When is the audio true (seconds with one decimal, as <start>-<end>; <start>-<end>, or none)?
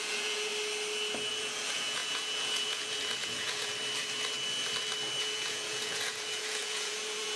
0.5-1.3; 3.7-5.2